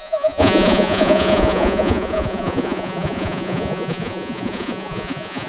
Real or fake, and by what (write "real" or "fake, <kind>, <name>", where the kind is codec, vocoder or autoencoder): fake, vocoder, Vocos